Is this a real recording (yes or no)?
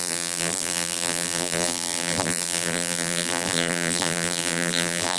no